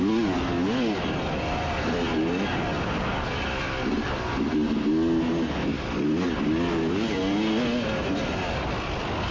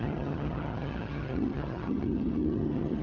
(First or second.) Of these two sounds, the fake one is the second